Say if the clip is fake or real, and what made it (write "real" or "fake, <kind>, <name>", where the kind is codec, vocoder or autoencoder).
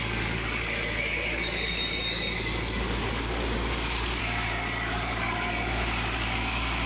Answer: fake, codec, DAC